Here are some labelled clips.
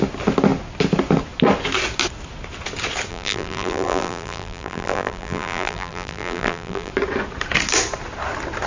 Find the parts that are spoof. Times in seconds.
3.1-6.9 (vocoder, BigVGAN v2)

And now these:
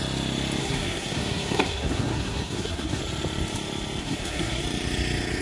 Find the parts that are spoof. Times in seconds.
0.6-3.0 (codec, SNAC); 4.0-4.6

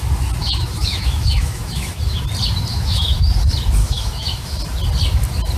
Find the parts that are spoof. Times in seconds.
0.4-2.2 (autoencoder, DAC-VAE); 2.7-3.3; 3.8-4.6

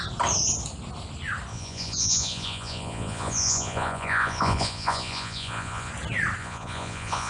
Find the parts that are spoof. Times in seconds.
1.5-5.9 (vocoder, Vocos); 6.4-7.3

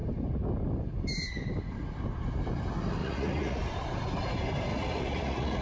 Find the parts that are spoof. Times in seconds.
3.0-3.6 (vocoder, Vocos); 4.7-5.6

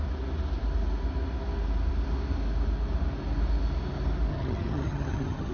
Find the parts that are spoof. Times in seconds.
4.3-5.5 (vocoder, HiFi-GAN)

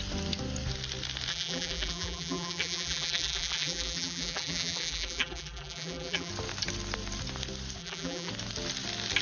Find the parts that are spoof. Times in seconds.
1.3-6.3 (vocoder, BigVGAN v2); 7.8-8.3